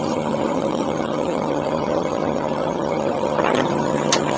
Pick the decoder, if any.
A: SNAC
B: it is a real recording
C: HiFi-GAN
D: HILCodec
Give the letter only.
C